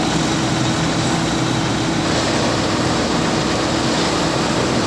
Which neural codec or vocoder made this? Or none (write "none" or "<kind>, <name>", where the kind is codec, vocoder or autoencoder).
none